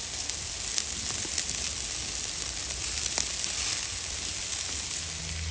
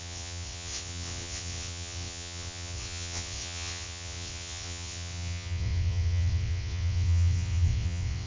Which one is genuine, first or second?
first